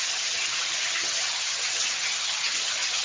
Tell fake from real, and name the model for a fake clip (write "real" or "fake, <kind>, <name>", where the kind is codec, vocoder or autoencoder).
fake, vocoder, HiFi-GAN